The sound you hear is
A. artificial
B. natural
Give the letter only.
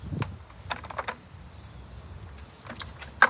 B